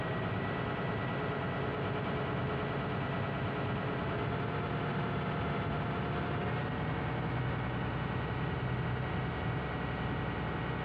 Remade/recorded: recorded